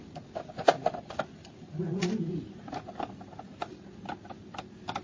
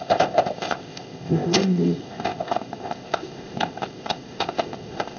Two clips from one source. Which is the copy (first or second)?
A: second